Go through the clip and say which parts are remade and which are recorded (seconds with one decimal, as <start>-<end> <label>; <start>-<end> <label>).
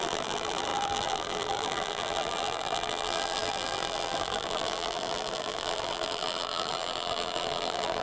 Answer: 0.0-8.0 remade